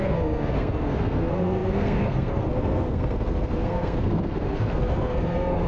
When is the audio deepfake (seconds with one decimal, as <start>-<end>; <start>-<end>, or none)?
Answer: 0.0-5.7